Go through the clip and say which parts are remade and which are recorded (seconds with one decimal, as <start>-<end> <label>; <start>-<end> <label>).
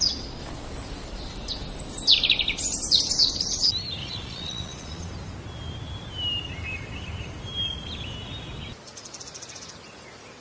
0.0-4.0 recorded; 4.0-5.1 remade; 5.1-10.4 recorded